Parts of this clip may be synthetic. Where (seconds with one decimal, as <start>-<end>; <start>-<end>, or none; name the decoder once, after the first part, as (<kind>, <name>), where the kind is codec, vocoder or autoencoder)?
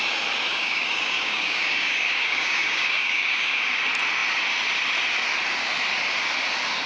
0.5-3.8 (codec, DAC)